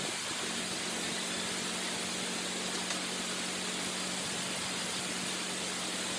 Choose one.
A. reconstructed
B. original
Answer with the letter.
B